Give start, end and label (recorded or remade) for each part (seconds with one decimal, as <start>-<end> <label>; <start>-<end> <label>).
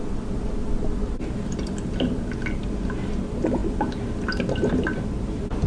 0.0-5.7 recorded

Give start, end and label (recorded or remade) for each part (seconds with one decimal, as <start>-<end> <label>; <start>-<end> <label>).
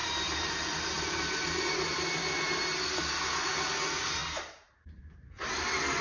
0.0-1.8 remade; 1.8-4.2 recorded; 4.2-5.3 remade; 5.3-6.0 recorded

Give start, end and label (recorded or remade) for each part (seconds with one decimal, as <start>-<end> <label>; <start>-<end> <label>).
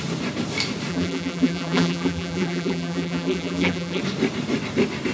0.0-0.9 recorded; 0.9-4.0 remade; 4.0-5.1 recorded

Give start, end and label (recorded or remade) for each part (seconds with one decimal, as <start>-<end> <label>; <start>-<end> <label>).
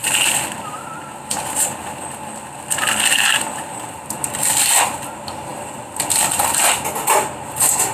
0.0-7.9 recorded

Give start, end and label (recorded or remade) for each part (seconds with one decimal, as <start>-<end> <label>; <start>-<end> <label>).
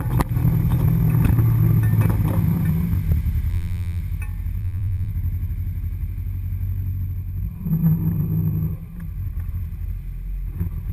0.0-3.5 recorded; 3.5-4.0 remade; 4.0-4.6 recorded; 4.6-5.1 remade; 5.1-10.9 recorded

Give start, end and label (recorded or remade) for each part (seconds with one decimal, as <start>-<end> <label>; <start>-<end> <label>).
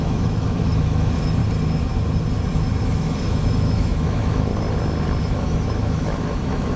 0.0-1.4 remade; 1.4-2.8 recorded; 2.8-4.5 remade; 4.5-5.2 recorded; 5.2-6.8 remade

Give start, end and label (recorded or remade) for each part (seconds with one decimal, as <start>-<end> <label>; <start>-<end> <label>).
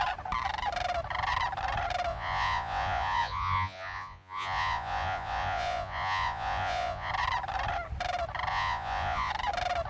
0.0-2.1 recorded; 2.1-7.1 remade; 7.1-8.5 recorded; 8.5-9.3 remade; 9.3-9.9 recorded